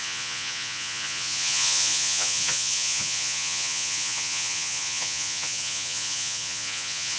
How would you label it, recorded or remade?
remade